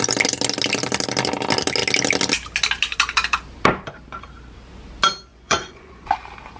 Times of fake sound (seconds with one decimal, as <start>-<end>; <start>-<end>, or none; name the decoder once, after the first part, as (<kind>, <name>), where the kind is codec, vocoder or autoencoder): 5.3-6.1 (vocoder, Vocos)